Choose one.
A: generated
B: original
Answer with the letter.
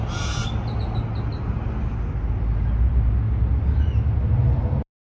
B